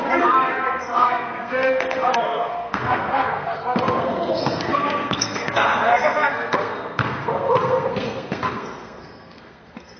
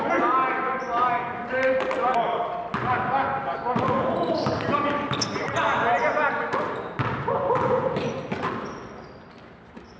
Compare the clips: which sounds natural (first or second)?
second